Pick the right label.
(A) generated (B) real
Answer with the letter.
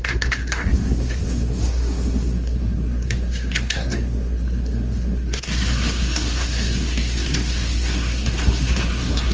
A